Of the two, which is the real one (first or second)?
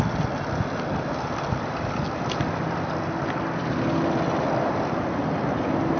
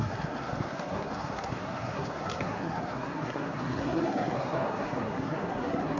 first